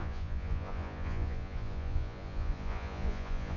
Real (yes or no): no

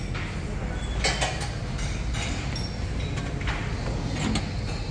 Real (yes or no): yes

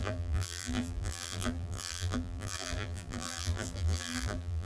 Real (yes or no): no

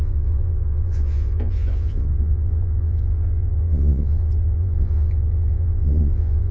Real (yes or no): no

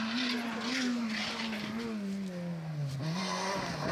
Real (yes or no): yes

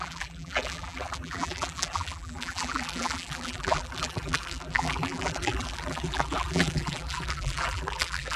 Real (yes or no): no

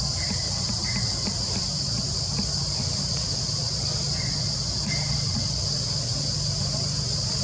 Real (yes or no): yes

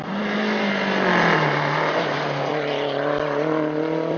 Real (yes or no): yes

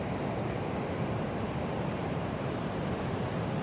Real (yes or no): no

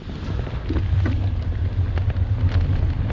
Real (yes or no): yes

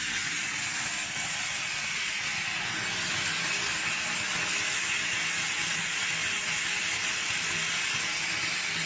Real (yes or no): yes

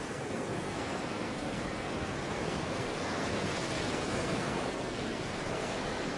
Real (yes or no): no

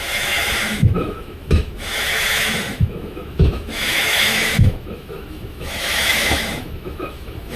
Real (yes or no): no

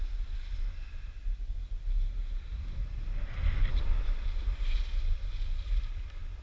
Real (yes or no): yes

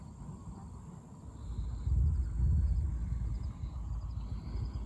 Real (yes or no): yes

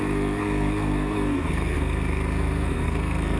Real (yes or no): no